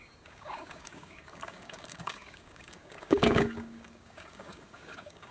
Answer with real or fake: fake